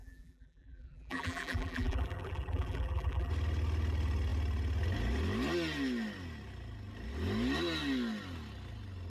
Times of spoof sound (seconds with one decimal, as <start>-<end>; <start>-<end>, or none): 0.0-3.3